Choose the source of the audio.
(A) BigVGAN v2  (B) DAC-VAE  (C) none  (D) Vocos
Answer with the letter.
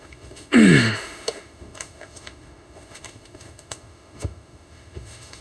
B